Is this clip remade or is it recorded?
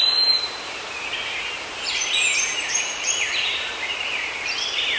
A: remade